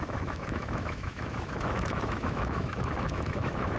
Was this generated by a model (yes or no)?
yes